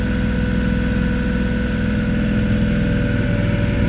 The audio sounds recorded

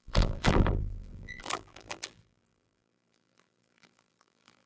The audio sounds remade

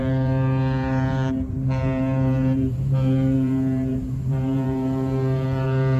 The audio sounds remade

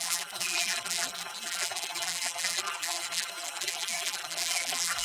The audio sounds remade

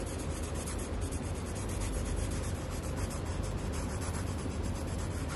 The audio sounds remade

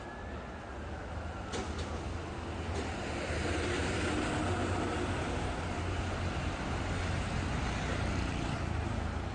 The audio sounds recorded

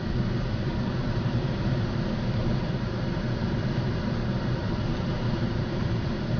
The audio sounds remade